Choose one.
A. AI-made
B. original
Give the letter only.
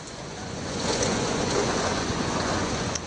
A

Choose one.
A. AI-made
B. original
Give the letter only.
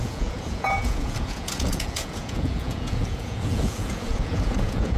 A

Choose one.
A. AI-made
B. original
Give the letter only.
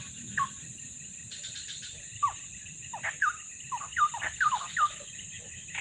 A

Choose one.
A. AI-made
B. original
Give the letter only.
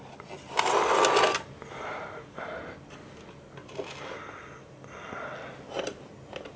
B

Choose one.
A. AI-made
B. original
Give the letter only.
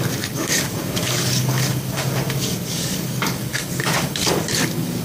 A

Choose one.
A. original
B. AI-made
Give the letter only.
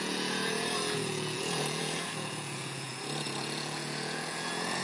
B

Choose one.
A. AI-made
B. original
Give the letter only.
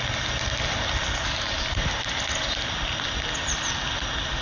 B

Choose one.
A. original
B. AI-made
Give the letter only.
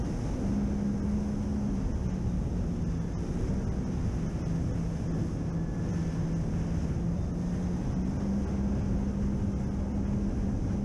A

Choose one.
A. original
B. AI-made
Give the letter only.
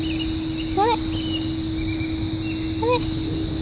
A